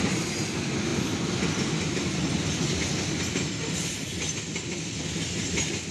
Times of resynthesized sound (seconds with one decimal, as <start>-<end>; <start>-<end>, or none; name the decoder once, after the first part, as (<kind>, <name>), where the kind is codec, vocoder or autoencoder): none